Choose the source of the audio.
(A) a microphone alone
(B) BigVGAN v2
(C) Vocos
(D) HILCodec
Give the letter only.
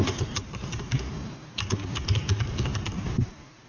B